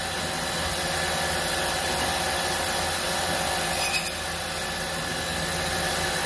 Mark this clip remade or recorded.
recorded